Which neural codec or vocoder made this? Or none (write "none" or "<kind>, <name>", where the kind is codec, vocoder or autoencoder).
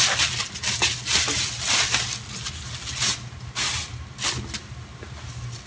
none